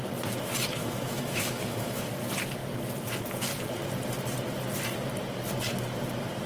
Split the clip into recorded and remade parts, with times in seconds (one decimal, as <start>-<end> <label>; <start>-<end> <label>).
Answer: 0.0-0.8 recorded; 0.8-2.1 remade; 2.1-6.5 recorded